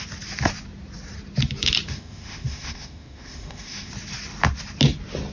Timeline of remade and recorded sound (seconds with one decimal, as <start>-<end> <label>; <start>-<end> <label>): 0.0-1.9 recorded; 1.9-3.9 remade; 3.9-5.3 recorded